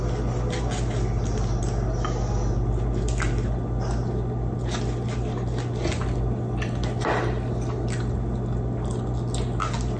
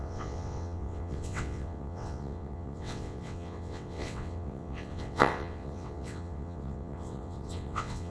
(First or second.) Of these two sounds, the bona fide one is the first